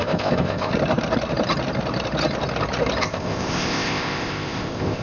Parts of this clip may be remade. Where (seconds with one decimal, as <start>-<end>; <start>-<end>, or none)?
0.0-0.7; 3.0-5.0